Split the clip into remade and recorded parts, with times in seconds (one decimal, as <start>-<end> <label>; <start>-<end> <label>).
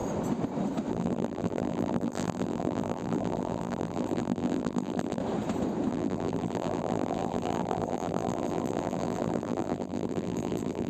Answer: 0.0-0.9 recorded; 0.9-5.2 remade; 5.2-5.9 recorded; 5.9-10.9 remade